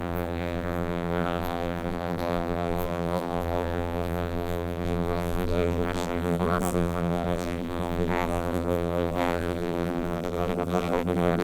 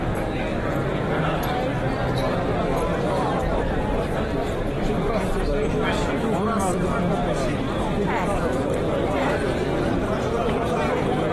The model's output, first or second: first